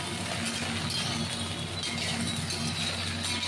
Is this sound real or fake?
real